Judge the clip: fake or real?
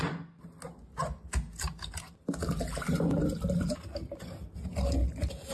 real